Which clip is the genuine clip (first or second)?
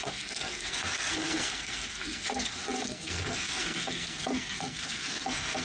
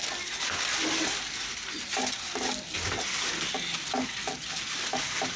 second